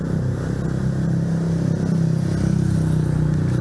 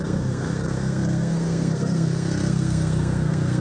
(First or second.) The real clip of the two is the first